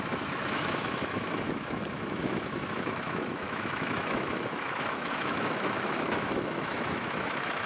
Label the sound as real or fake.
fake